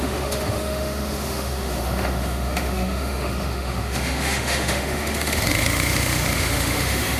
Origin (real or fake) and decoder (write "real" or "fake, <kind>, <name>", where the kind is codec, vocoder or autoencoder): fake, autoencoder, DAC-VAE